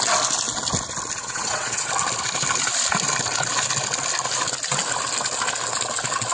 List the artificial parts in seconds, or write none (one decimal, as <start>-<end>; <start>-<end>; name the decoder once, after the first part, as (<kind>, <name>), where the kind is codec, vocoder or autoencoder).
1.2-1.9 (vocoder, WaveNeXt)